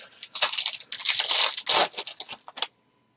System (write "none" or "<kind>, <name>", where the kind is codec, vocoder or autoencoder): none